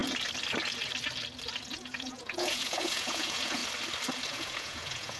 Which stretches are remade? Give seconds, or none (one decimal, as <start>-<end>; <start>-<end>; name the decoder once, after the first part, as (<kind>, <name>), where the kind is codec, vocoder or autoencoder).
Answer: 1.7-3.6 (vocoder, Vocos); 4.3-5.2